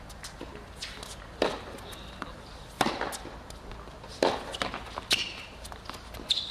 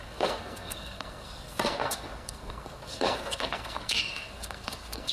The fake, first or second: second